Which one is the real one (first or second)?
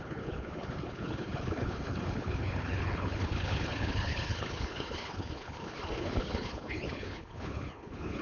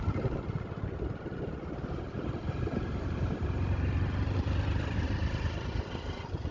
second